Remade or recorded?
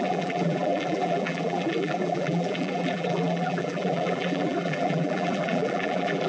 remade